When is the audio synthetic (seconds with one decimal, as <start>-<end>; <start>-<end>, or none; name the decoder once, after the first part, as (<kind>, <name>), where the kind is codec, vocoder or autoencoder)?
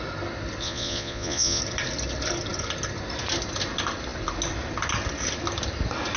0.6-1.6 (vocoder, Vocos)